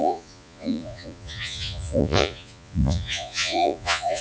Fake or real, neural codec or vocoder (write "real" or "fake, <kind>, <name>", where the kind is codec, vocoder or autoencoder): fake, vocoder, Vocos